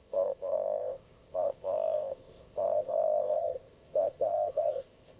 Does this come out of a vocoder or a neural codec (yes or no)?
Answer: yes